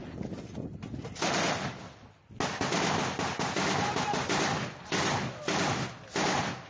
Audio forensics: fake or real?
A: real